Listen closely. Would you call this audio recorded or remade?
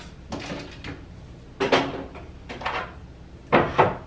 recorded